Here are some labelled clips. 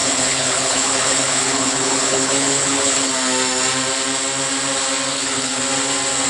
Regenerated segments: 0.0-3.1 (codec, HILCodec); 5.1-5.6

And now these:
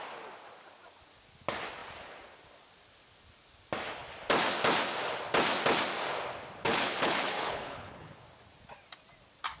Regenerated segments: 6.6-8.2 (codec, HILCodec)

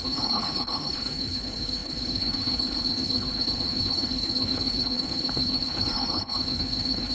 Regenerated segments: 0.0-7.1 (codec, HILCodec)

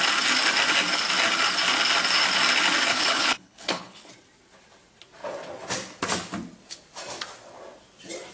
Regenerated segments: 2.9-4.1 (codec, HILCodec)

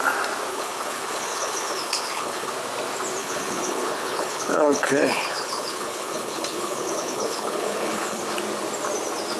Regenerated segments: 0.5-2.5 (codec, HILCodec); 3.2-8.2

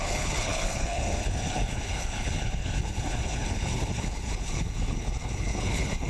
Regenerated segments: 0.0-6.1 (codec, HILCodec)